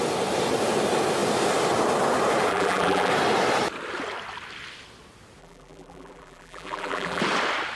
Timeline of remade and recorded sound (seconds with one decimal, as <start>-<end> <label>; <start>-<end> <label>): 0.0-2.5 recorded; 2.5-3.1 remade; 3.1-5.4 recorded; 5.4-7.2 remade; 7.2-7.8 recorded